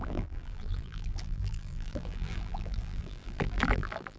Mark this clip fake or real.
fake